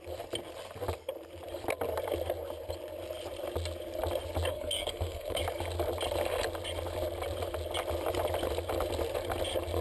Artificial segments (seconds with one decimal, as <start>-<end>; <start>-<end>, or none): 4.5-5.4